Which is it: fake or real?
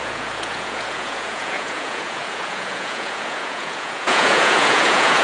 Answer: fake